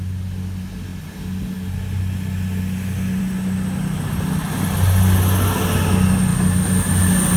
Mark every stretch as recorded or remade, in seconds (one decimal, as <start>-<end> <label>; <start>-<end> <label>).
0.0-7.4 recorded